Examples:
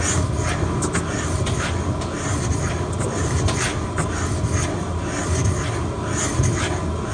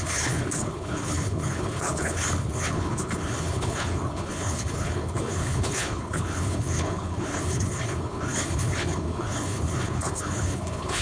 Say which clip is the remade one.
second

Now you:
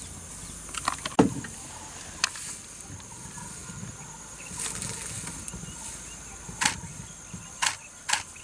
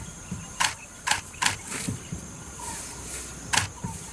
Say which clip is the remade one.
second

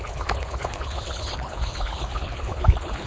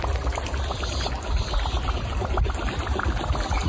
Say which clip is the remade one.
first